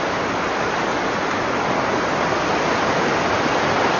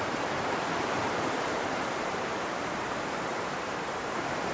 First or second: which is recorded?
first